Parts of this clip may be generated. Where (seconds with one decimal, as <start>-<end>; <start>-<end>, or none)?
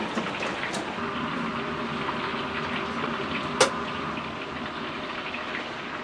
none